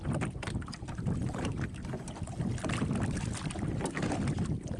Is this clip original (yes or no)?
yes